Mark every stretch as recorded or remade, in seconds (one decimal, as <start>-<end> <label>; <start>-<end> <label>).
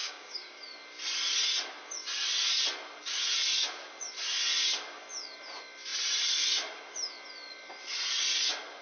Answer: 0.0-0.6 remade; 0.6-8.8 recorded